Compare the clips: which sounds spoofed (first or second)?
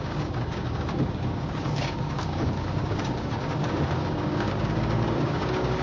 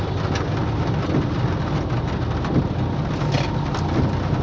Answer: first